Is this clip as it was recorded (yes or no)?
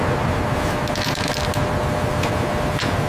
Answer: yes